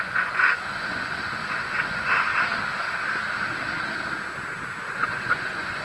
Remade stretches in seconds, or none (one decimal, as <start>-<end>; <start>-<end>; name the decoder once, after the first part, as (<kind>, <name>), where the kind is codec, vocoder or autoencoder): 0.0-2.3 (vocoder, Vocos); 4.9-5.8